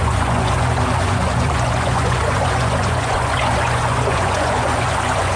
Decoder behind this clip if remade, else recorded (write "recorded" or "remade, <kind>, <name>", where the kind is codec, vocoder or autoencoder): remade, vocoder, Vocos